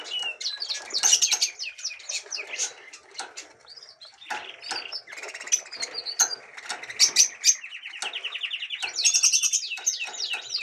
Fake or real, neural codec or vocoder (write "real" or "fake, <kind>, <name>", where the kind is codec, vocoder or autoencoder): real